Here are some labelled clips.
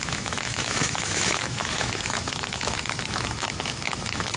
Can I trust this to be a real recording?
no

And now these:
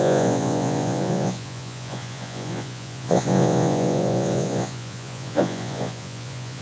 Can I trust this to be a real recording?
no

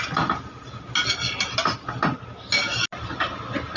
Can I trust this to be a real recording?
yes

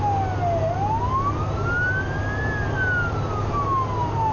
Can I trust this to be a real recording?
yes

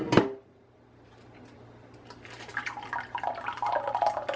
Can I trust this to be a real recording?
yes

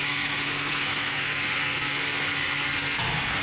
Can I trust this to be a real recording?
no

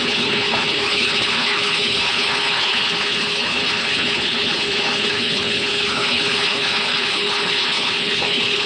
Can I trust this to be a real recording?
no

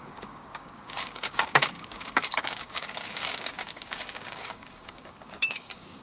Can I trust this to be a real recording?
no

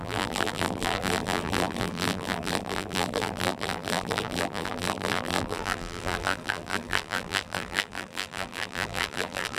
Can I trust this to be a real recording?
no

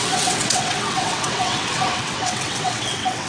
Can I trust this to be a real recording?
no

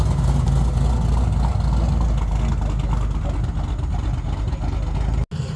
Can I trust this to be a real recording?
yes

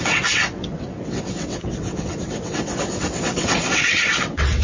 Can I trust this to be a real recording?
no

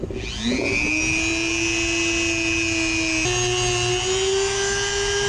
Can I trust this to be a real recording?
yes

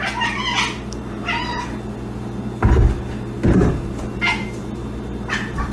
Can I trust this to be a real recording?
yes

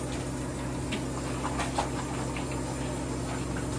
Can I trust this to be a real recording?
yes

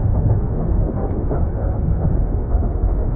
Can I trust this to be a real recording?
no